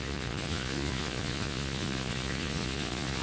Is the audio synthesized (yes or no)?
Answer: yes